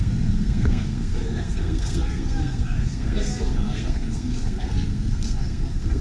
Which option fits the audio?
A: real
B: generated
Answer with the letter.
B